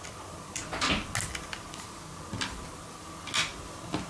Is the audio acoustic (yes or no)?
yes